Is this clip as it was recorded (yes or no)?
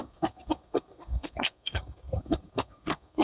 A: no